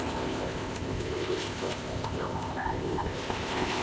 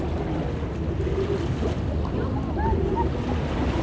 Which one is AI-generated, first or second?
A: first